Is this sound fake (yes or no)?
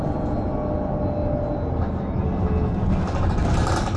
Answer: no